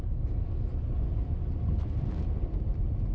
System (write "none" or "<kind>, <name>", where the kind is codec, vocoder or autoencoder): none